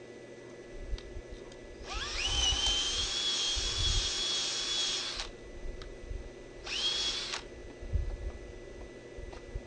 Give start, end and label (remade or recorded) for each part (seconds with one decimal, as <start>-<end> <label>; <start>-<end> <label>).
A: 0.0-9.7 recorded